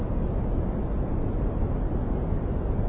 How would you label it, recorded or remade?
recorded